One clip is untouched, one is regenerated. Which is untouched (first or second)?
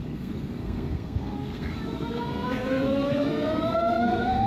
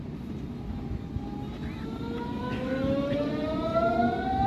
second